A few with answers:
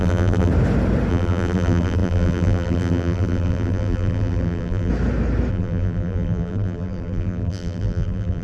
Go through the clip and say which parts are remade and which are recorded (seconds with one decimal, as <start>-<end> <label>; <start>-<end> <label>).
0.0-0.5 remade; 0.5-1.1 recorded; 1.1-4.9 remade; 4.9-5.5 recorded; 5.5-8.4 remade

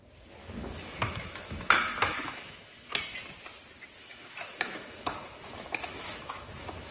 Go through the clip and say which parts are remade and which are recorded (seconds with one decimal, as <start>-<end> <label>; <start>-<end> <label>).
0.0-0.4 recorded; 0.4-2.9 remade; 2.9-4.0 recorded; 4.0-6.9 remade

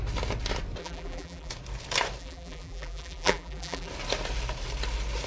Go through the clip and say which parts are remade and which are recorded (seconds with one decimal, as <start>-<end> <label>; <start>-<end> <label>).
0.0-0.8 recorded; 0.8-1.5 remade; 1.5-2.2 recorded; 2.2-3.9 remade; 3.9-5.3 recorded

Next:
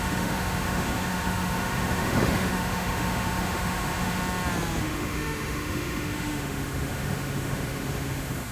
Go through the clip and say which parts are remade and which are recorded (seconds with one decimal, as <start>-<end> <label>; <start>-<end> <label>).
0.0-4.2 remade; 4.2-4.8 recorded; 4.8-8.5 remade